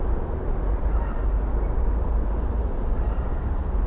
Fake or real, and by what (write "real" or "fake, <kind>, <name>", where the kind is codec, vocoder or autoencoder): real